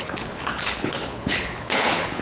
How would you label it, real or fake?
fake